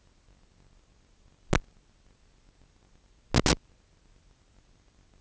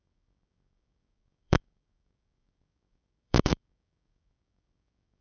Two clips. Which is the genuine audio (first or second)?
first